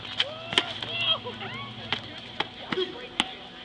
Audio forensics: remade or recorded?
recorded